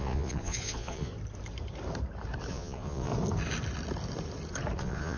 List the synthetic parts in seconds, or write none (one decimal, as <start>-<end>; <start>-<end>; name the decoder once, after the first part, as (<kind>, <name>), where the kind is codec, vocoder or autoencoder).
0.0-1.1 (vocoder, Vocos); 2.5-3.1; 4.8-5.2